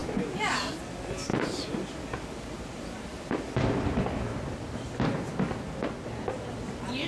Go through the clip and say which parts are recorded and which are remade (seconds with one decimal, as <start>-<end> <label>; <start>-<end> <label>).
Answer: 0.0-7.1 recorded